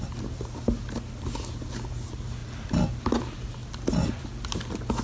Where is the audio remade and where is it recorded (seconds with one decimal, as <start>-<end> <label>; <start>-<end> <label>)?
0.0-5.0 recorded